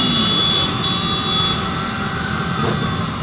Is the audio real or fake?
real